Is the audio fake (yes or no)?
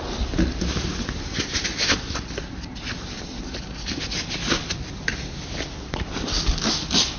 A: no